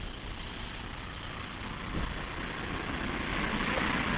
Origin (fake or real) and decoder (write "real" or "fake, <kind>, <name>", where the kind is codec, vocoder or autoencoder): real